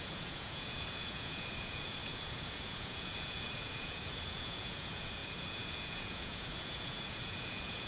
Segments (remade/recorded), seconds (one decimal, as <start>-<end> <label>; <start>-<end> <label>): 0.0-7.9 remade